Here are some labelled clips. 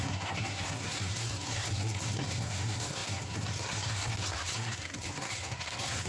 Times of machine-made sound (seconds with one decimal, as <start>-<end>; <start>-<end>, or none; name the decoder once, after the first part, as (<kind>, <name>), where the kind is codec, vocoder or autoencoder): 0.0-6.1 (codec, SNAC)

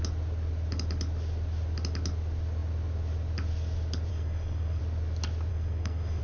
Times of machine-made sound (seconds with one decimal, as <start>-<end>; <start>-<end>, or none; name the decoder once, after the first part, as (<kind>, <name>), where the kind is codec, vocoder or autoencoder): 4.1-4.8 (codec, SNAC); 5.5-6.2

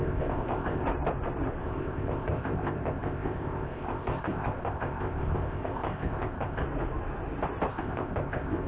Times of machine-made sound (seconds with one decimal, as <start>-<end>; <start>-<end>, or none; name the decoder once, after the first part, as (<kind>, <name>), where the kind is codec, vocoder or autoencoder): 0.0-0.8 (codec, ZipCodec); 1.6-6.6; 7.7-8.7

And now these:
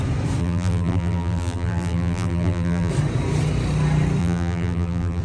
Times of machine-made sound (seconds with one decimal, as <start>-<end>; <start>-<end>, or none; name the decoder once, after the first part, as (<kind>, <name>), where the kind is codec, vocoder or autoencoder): 0.4-2.9 (vocoder, BigVGAN v2); 4.2-5.2

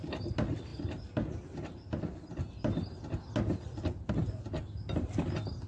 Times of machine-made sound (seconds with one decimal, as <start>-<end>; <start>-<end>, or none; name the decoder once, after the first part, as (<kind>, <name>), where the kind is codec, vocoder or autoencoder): none

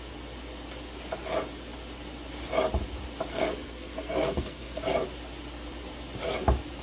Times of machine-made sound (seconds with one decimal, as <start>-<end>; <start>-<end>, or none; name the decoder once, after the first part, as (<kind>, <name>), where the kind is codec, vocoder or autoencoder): 3.3-4.8 (codec, SNAC)